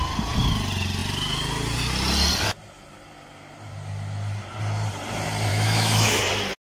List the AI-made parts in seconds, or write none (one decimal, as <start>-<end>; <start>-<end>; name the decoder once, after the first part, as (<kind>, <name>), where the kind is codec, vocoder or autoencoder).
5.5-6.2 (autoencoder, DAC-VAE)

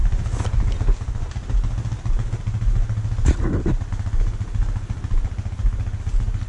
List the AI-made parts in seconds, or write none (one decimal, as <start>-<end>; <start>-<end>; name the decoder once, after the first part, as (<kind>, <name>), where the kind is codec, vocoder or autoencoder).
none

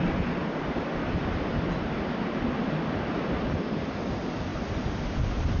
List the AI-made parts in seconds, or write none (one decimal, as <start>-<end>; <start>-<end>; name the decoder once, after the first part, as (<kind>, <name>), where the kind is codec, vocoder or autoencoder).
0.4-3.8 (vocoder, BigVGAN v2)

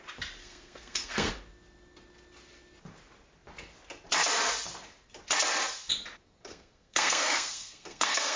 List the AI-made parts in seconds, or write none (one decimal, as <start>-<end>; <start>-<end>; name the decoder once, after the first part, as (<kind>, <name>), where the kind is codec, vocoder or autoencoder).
0.4-1.3 (codec, SNAC); 6.5-8.4

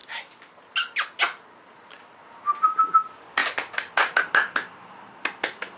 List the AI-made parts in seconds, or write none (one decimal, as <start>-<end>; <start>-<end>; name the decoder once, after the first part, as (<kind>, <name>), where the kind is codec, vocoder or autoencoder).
none

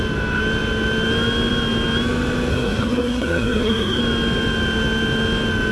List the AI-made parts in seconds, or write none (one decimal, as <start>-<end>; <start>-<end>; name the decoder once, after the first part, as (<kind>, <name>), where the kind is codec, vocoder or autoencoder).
2.5-4.0 (codec, SNAC)